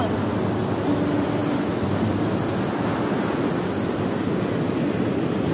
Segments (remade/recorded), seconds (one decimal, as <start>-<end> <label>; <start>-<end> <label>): 0.0-5.5 recorded